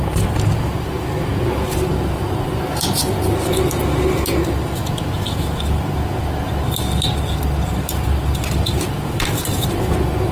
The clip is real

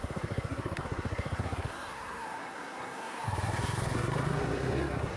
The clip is fake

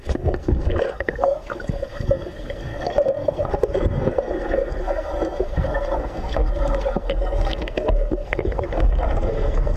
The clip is fake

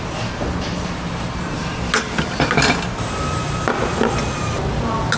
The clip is real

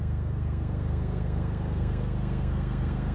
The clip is fake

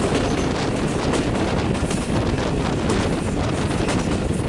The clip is real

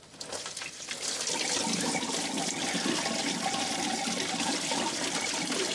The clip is real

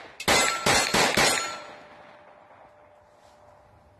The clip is real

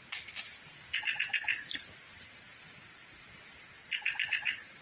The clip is real